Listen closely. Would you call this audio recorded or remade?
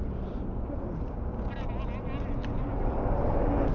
recorded